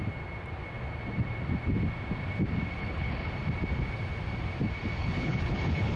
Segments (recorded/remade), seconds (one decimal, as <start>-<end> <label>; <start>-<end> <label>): 0.0-2.8 recorded; 2.8-3.3 remade; 3.3-5.0 recorded; 5.0-6.0 remade